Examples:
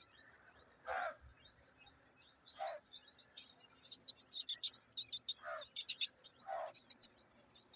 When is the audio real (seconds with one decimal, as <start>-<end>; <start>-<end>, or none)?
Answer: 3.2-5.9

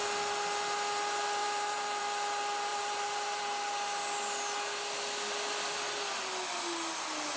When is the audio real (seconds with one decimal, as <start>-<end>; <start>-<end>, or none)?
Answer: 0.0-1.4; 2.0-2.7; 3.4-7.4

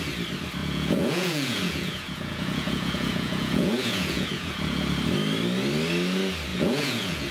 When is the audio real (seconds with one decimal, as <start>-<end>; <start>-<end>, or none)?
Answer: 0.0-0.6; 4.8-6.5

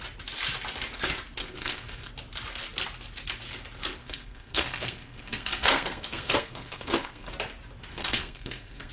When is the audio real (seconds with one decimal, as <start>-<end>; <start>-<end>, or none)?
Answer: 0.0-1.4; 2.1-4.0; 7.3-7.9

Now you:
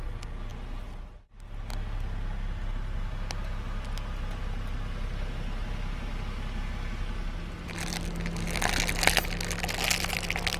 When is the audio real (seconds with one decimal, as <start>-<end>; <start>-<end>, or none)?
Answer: 0.0-10.6

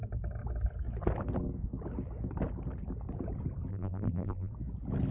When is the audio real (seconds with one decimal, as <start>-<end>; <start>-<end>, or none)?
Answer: 0.0-3.7; 4.5-5.1

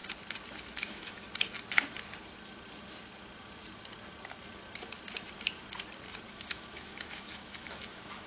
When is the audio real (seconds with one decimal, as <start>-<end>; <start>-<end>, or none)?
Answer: 0.0-0.6; 1.3-6.3

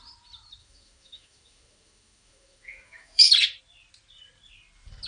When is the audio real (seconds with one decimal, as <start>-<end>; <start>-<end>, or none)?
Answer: 0.0-0.6; 3.3-5.1